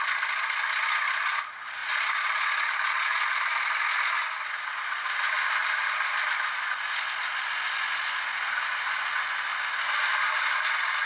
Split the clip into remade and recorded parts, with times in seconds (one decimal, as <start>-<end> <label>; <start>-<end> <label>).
0.0-11.1 recorded